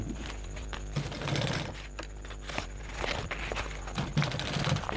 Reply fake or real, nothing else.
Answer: real